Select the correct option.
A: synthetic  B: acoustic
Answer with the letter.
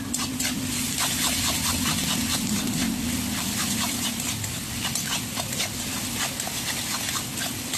B